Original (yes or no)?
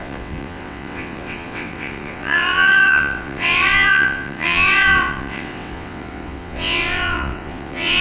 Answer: no